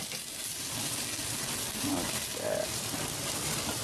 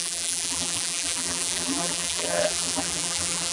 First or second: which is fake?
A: second